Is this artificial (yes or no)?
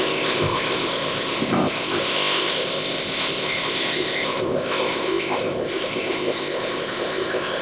yes